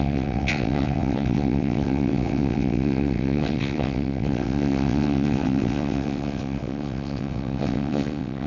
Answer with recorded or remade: remade